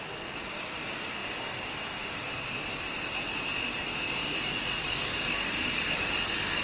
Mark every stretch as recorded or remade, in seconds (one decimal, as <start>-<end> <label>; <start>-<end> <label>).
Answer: 0.0-2.3 remade; 2.3-4.9 recorded; 4.9-6.6 remade